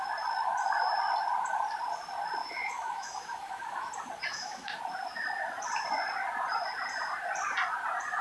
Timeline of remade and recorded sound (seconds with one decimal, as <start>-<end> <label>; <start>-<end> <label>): 0.0-2.4 recorded; 2.4-3.9 remade; 3.9-4.3 recorded; 4.3-4.8 remade; 4.8-8.2 recorded